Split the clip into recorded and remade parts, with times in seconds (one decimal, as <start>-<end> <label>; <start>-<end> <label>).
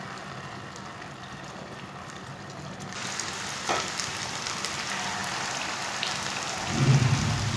0.0-7.6 recorded